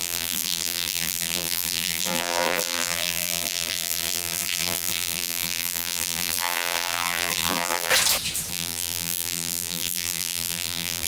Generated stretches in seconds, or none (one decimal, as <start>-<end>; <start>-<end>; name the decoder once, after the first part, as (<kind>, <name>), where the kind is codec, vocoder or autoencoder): 0.0-7.9 (vocoder, BigVGAN v2); 8.5-11.1